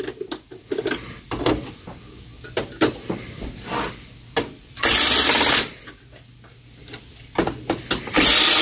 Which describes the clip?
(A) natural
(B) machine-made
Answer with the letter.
A